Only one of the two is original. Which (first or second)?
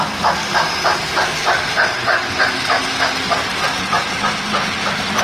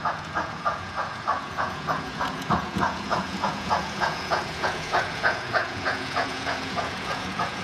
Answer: first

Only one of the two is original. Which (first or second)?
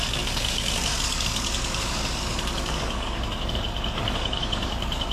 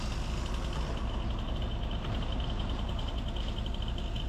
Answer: second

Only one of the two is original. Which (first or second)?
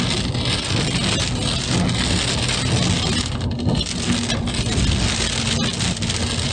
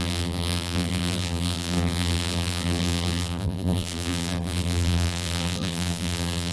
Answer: first